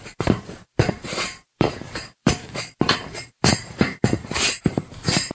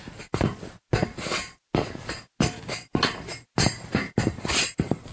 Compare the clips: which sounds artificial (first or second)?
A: first